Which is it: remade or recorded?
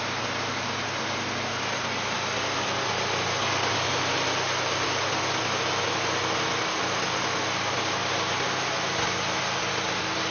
recorded